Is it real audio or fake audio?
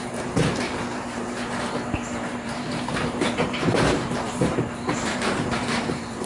fake